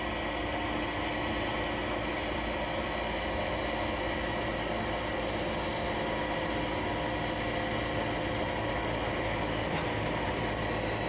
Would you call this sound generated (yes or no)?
no